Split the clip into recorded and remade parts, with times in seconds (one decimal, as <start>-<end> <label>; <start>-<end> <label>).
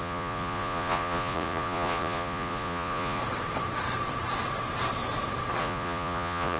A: 0.0-3.2 remade; 3.2-5.6 recorded; 5.6-6.6 remade